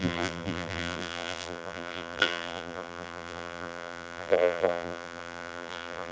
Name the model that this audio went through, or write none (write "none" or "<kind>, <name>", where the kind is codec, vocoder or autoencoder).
vocoder, BigVGAN v2